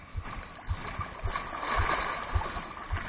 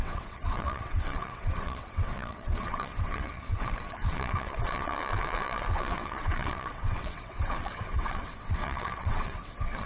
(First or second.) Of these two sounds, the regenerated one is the second